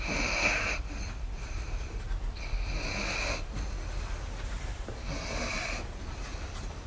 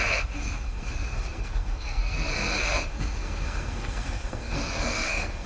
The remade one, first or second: second